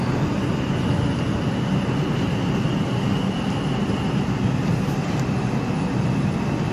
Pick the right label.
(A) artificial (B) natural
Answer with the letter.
B